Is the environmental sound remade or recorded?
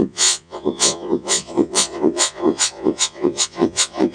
remade